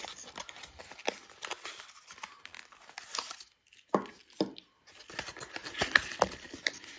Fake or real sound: real